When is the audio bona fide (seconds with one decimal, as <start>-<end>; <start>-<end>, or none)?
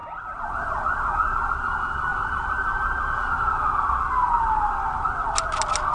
1.5-2.1; 4.4-5.9